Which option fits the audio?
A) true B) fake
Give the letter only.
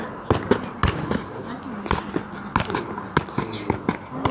A